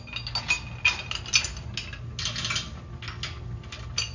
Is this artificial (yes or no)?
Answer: no